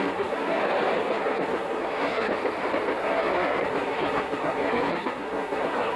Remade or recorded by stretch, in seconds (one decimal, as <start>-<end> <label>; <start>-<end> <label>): 0.0-0.6 remade; 0.6-1.1 recorded; 1.1-2.3 remade; 2.3-3.0 recorded; 3.0-6.0 remade